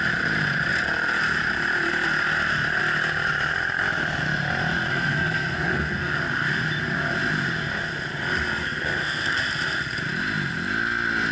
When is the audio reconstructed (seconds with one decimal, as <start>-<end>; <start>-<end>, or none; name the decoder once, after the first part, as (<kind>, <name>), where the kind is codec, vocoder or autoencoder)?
4.9-6.2 (codec, SNAC); 8.6-9.4